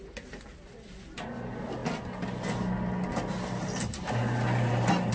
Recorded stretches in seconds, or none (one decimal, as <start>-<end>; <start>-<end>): 0.0-5.1